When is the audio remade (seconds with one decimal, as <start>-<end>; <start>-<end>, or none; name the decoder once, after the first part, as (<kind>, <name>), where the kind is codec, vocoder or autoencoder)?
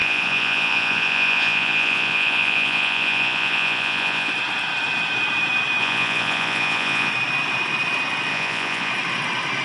0.0-4.3 (vocoder, Vocos); 5.8-7.1; 8.3-8.9